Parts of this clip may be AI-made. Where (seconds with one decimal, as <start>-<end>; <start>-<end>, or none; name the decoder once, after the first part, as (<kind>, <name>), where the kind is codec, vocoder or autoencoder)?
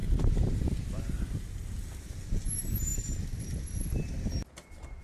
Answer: 2.9-4.2 (vocoder, BigVGAN v2)